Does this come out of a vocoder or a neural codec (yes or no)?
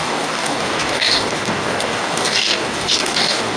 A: yes